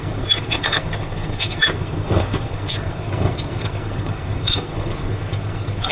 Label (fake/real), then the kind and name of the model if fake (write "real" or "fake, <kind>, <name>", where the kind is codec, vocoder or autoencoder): fake, codec, SNAC